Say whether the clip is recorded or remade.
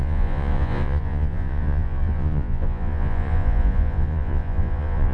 remade